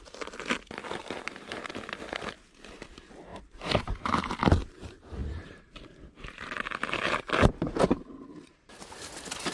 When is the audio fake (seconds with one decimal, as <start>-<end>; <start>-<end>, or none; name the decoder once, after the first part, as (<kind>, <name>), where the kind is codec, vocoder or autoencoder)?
1.0-1.7 (vocoder, BigVGAN v2); 3.3-4.4; 5.2-8.9